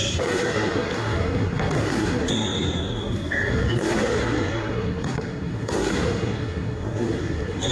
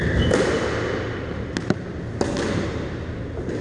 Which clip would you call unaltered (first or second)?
second